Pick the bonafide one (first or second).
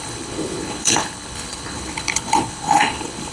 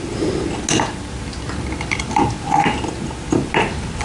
second